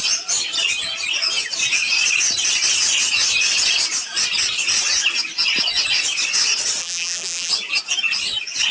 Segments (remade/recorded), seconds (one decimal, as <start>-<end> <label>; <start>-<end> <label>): 0.0-6.8 recorded; 6.8-7.5 remade; 7.5-8.7 recorded